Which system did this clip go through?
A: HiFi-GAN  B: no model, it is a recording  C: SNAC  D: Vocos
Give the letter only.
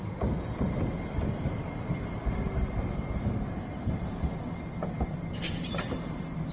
B